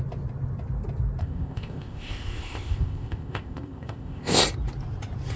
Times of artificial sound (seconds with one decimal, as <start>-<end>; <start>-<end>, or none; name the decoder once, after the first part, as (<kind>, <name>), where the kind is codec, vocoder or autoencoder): 1.2-4.4 (codec, ZipCodec)